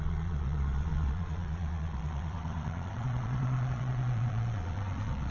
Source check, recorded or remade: remade